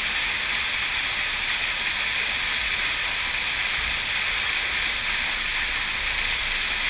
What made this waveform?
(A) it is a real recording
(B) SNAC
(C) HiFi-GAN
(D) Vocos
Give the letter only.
A